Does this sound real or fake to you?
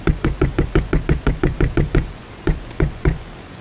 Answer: fake